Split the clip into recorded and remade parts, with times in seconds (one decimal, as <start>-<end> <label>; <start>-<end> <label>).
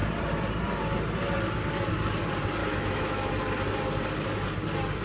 0.0-2.6 recorded; 2.6-3.3 remade; 3.3-5.0 recorded